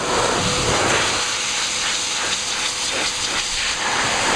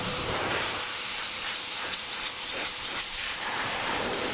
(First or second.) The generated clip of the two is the second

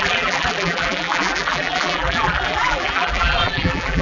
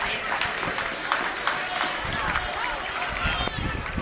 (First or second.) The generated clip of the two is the first